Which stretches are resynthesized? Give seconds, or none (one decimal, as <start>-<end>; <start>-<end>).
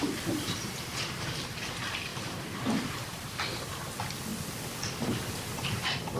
2.1-3.0